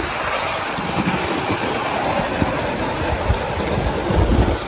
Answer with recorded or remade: recorded